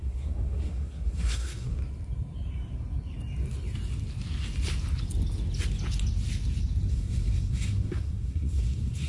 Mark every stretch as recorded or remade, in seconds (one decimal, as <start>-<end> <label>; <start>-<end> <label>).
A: 0.0-1.8 remade; 1.8-6.9 recorded; 6.9-9.1 remade